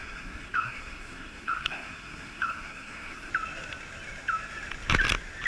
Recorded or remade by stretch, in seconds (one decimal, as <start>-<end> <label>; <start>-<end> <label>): 0.0-3.3 remade; 3.3-5.5 recorded